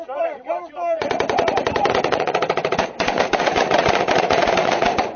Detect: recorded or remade remade